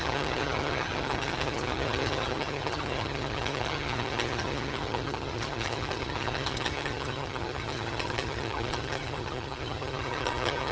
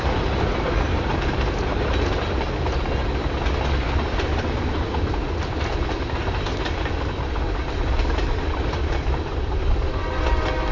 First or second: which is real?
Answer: second